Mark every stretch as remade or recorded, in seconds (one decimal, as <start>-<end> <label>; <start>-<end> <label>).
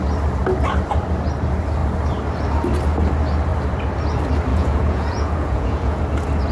0.0-4.5 recorded; 4.5-6.0 remade; 6.0-6.5 recorded